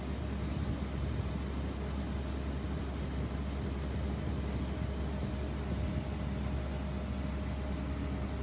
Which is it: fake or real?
real